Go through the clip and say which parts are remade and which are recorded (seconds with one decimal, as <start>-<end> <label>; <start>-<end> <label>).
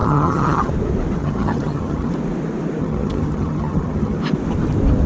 0.0-0.7 remade; 0.7-1.2 recorded; 1.2-2.1 remade; 2.1-2.8 recorded; 2.8-4.2 remade; 4.2-5.1 recorded